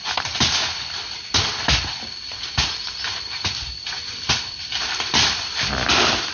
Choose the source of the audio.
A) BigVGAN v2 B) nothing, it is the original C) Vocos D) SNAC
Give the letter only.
B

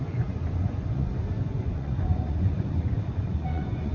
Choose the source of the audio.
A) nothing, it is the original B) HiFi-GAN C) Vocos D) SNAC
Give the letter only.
C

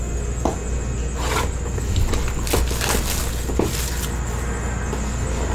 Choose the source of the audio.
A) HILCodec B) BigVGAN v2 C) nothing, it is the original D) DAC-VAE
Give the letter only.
C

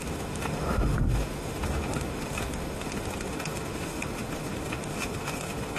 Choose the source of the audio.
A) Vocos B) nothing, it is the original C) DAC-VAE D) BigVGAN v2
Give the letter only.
C